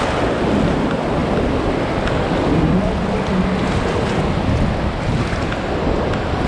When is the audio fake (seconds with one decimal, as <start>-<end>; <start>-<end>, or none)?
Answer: none